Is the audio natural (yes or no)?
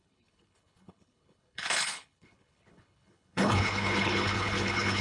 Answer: no